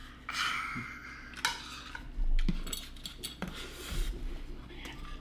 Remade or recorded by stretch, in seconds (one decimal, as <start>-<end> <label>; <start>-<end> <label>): 0.0-5.2 recorded